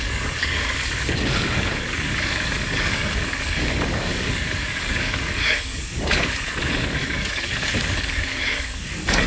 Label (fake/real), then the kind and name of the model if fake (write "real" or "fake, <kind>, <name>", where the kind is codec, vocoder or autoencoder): fake, codec, DAC